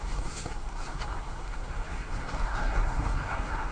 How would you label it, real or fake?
fake